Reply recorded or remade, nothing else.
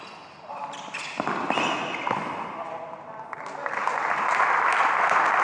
recorded